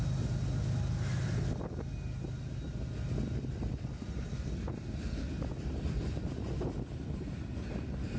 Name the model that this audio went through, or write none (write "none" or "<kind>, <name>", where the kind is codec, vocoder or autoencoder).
none